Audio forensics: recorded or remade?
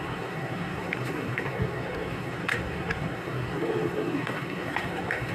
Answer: remade